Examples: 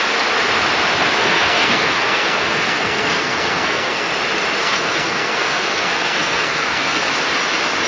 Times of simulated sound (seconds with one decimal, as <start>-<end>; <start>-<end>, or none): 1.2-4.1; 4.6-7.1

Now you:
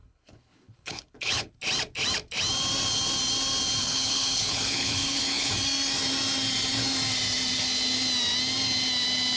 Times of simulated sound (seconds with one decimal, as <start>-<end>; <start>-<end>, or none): 0.0-1.5; 3.8-5.5

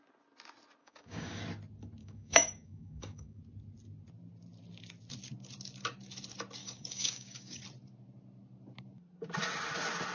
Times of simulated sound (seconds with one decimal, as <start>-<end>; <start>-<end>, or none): 0.8-1.4; 2.0-3.4; 6.6-7.6

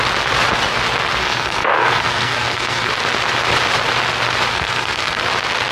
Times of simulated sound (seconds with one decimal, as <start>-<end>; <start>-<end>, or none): 1.2-2.9; 4.5-5.2